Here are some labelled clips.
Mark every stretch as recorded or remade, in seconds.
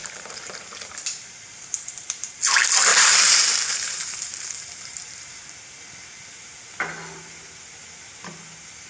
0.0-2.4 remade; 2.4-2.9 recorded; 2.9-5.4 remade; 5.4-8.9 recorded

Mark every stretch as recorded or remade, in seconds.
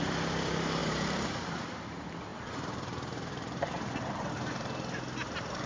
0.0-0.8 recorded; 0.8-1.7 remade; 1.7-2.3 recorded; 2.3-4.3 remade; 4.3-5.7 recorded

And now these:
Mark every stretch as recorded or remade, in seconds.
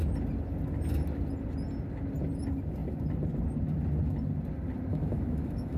0.0-4.9 recorded; 4.9-5.8 remade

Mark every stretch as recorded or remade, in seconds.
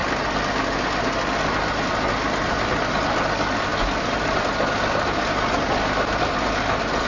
0.0-7.1 recorded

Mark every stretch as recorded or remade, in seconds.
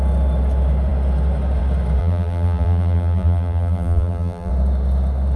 0.0-2.0 recorded; 2.0-4.5 remade; 4.5-5.4 recorded